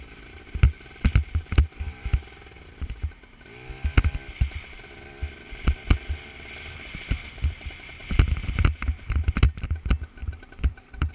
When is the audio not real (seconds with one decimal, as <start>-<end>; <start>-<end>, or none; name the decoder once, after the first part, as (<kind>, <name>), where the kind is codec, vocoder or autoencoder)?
10.2-11.1 (vocoder, BigVGAN v2)